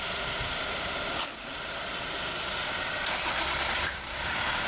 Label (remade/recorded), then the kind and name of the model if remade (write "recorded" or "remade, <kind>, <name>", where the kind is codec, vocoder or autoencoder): remade, vocoder, BigVGAN v2